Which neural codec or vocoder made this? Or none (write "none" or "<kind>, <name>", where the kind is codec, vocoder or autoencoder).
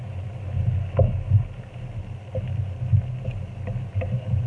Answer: none